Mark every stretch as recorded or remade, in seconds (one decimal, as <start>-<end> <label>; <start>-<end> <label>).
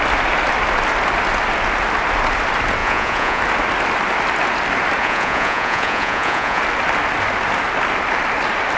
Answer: 0.0-2.8 recorded; 2.8-3.4 remade; 3.4-5.0 recorded; 5.0-6.6 remade; 6.6-8.8 recorded